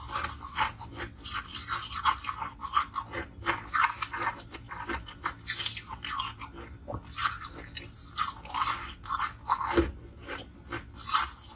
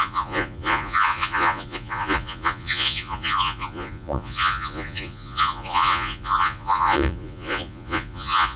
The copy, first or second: second